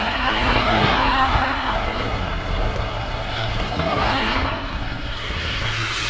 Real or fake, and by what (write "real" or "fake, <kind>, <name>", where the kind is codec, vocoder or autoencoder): fake, codec, SNAC